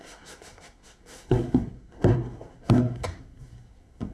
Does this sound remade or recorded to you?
remade